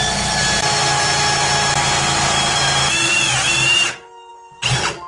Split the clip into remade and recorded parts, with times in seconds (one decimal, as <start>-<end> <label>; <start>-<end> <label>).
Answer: 0.0-5.1 recorded